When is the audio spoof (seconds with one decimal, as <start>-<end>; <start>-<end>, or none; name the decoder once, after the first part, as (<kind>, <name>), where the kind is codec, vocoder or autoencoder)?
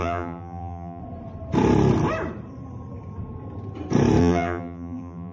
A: 0.0-1.0 (vocoder, BigVGAN v2); 4.2-5.3